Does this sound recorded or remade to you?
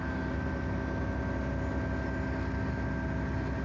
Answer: recorded